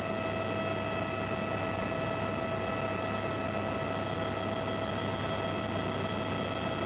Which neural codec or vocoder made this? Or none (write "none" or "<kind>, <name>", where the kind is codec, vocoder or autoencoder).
none